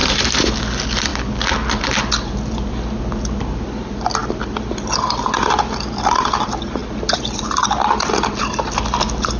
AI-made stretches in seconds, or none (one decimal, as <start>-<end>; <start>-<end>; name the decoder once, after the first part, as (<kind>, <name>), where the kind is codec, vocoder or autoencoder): 0.0-0.5 (vocoder, BigVGAN v2)